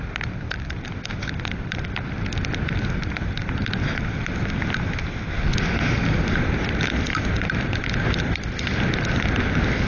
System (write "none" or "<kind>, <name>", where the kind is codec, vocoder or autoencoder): none